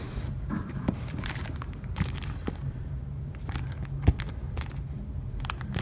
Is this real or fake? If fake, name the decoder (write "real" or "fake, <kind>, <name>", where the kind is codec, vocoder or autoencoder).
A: fake, vocoder, BigVGAN v2